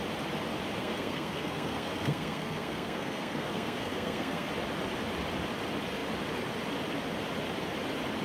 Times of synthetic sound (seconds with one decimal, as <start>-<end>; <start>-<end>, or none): 0.8-4.5